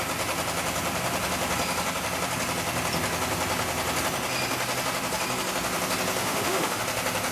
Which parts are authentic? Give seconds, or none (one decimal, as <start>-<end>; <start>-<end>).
0.0-6.2; 6.8-7.3